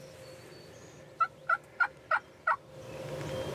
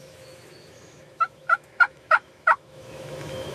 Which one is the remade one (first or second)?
second